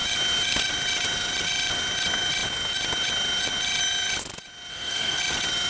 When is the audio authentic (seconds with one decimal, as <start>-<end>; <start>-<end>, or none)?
0.0-4.7; 5.2-5.7